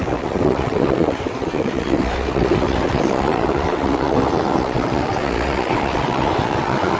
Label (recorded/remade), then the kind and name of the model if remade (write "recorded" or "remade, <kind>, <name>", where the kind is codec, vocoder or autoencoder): remade, vocoder, WaveNeXt